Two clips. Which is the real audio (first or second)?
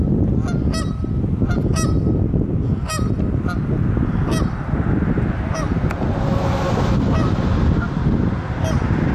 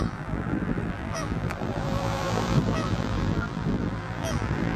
first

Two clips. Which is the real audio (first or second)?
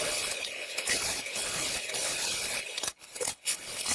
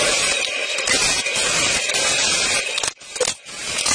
second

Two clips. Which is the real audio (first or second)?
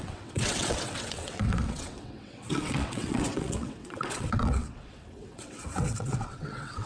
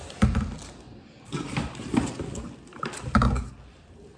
second